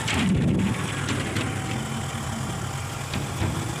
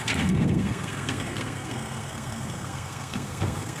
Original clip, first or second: first